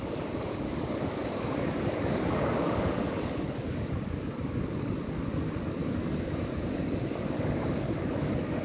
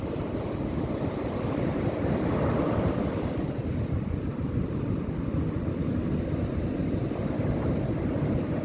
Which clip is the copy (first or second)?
first